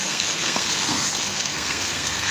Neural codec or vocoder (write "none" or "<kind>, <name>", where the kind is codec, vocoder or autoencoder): codec, SNAC